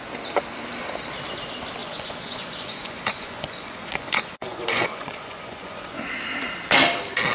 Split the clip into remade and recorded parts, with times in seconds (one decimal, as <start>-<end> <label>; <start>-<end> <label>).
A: 0.0-1.8 recorded; 1.8-6.0 remade; 6.0-7.3 recorded